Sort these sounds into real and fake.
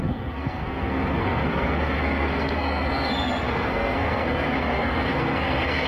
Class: fake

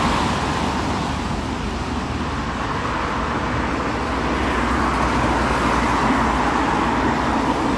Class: real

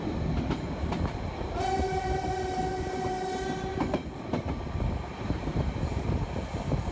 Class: real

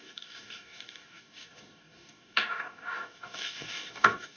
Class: fake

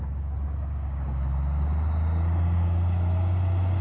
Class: real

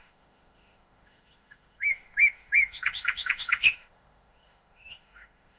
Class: fake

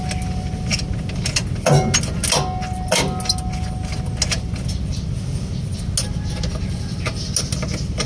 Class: real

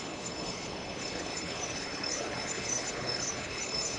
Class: fake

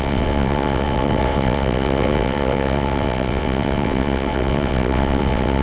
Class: fake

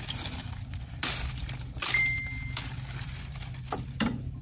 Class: real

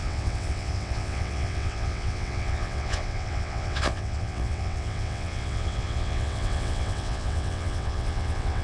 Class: fake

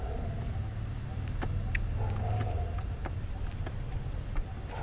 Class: real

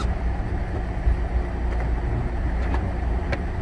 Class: real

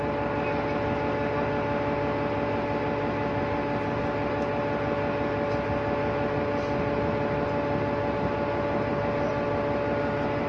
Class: real